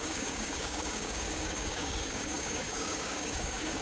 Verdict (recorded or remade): remade